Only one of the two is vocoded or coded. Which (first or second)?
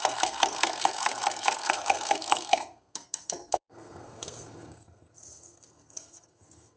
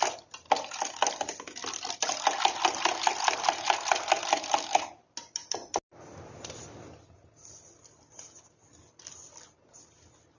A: first